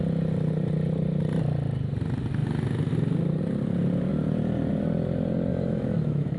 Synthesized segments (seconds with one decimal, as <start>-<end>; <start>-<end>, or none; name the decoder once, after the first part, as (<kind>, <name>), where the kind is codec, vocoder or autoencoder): 5.5-6.4 (autoencoder, DAC-VAE)